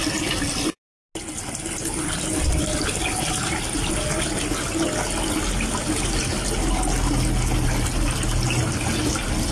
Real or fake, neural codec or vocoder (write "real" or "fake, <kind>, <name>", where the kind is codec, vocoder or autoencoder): real